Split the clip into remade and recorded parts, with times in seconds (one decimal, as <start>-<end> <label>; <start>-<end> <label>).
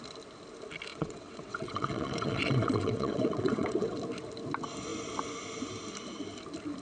0.0-0.9 recorded; 0.9-4.0 remade; 4.0-6.8 recorded